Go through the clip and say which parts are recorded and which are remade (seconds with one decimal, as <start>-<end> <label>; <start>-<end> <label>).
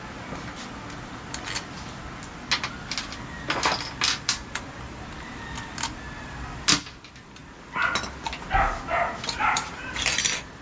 0.0-10.6 recorded